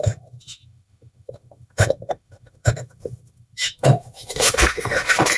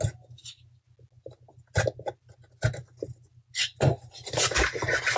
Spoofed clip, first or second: first